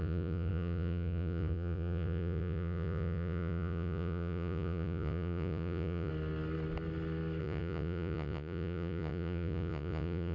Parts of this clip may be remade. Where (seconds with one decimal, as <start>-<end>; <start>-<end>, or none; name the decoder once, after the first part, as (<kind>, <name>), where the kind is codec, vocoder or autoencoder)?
0.0-6.1 (vocoder, Vocos); 7.4-10.3